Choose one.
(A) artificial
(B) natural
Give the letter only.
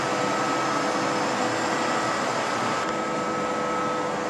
B